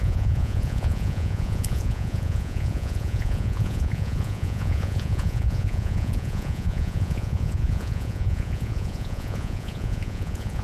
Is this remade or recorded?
remade